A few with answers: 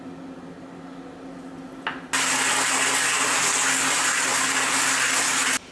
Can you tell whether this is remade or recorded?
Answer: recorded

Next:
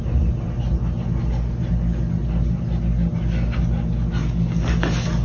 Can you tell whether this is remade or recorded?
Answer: recorded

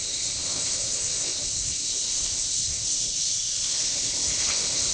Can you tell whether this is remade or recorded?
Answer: remade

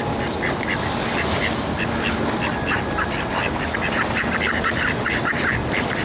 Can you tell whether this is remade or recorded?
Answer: recorded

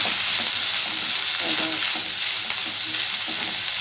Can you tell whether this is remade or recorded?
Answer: recorded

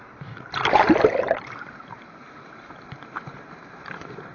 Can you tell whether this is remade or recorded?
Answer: remade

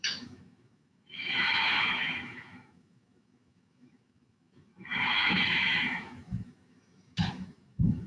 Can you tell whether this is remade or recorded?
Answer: remade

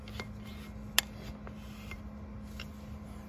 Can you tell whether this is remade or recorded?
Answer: recorded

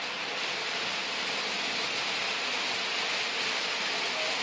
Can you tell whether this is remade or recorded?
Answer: recorded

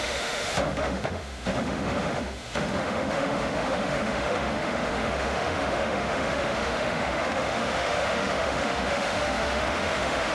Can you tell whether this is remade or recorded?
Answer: remade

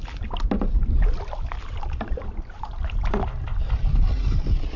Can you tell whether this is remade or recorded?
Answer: recorded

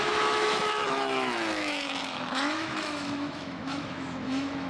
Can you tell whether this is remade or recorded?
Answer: remade